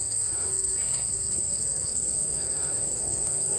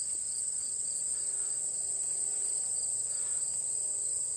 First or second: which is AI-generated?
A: first